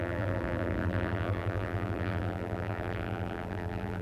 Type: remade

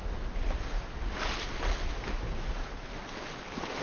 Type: recorded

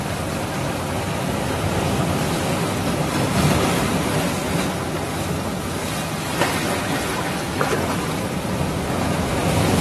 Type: recorded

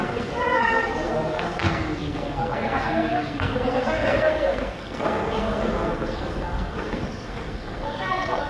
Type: remade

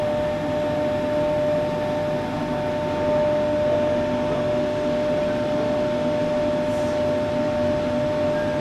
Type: recorded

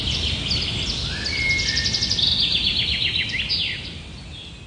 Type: recorded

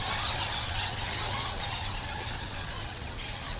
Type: remade